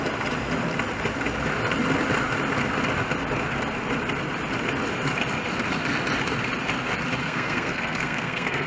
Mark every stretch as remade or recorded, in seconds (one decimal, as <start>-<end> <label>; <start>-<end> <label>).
0.0-7.2 recorded; 7.2-8.7 remade